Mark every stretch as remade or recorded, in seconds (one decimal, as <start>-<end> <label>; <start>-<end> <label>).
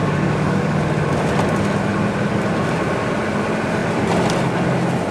0.0-0.8 remade; 0.8-5.1 recorded